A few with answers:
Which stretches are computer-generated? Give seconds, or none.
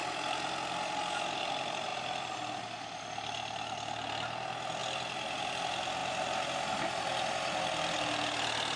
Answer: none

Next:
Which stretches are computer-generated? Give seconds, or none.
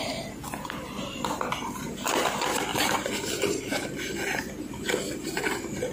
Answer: none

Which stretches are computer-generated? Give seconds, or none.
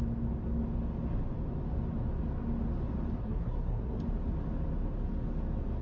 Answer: 3.2-4.0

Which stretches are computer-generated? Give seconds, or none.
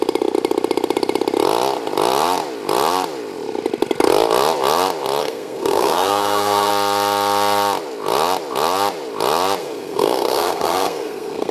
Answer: 5.2-6.7; 9.6-11.5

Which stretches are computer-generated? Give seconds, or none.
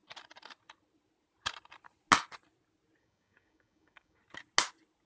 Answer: 3.0-4.2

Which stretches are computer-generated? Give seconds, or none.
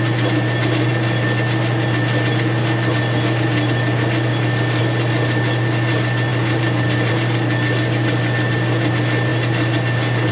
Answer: none